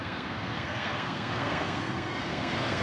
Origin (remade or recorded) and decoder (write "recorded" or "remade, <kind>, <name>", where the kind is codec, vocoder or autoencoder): remade, codec, SNAC